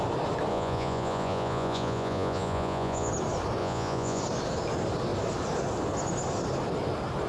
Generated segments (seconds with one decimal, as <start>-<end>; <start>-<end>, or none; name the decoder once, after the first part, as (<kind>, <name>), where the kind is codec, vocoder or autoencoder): 0.5-3.1 (vocoder, Vocos); 3.6-4.2